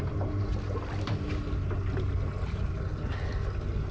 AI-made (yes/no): no